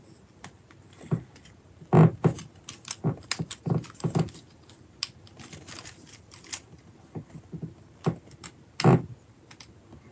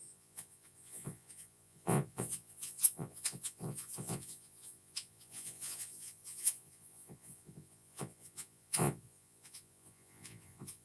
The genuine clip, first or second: first